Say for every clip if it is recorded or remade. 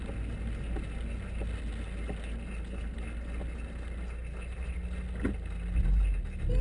recorded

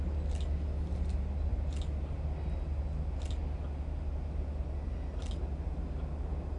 recorded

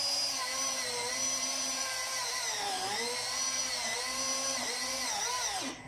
remade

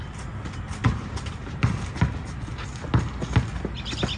recorded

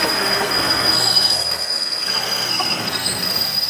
remade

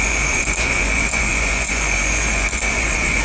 remade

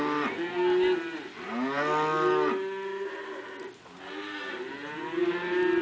recorded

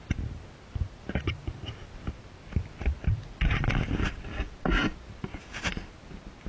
recorded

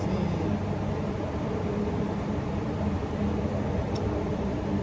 remade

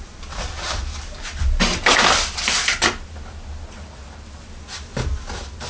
recorded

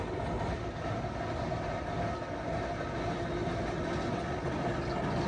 recorded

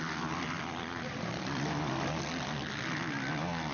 recorded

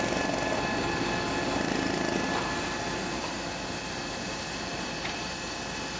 recorded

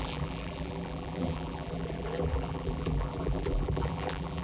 remade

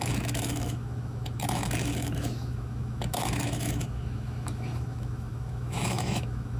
remade